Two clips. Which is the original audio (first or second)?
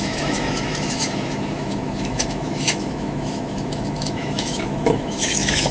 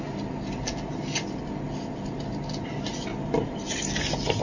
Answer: second